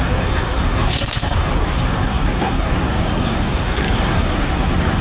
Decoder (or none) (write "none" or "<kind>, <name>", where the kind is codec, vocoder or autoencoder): codec, SNAC